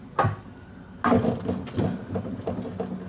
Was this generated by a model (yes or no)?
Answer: no